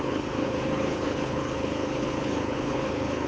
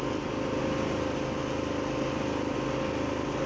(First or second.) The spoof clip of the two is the first